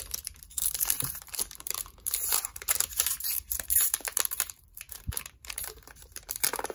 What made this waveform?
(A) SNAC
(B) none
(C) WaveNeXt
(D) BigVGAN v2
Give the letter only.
D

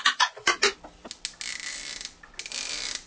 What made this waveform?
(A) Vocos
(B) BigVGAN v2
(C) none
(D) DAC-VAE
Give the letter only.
C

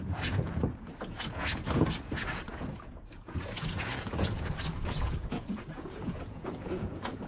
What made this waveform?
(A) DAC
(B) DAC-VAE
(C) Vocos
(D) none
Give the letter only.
C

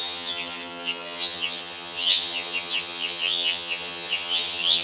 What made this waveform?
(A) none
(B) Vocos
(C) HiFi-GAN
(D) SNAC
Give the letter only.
C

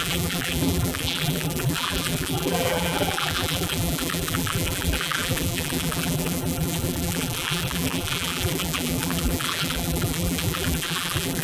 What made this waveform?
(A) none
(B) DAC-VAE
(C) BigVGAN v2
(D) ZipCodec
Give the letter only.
C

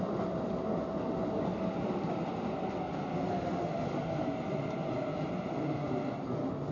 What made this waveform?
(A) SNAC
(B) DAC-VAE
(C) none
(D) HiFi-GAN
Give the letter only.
C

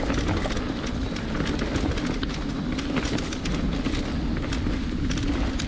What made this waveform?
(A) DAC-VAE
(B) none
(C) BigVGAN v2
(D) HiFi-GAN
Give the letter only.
B